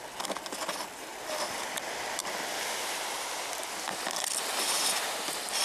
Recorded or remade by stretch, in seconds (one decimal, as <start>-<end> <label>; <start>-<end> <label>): 0.0-5.6 recorded